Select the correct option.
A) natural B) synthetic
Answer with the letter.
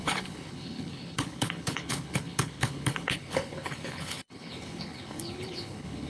B